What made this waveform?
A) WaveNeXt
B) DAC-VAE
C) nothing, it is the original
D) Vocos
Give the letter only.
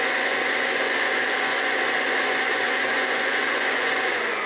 D